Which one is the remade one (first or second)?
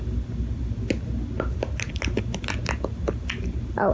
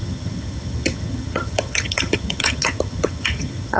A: second